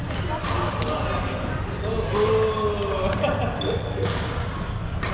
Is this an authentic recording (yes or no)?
yes